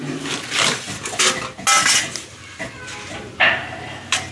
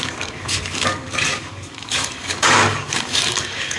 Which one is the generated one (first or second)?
second